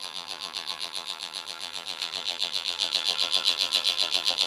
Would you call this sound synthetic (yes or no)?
yes